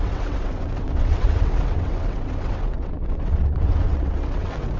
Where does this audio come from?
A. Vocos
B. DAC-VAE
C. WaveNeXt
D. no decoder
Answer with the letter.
C